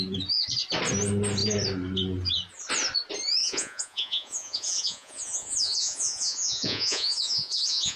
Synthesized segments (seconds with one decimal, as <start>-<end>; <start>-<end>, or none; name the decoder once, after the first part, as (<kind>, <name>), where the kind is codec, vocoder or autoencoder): 3.4-8.0 (vocoder, Vocos)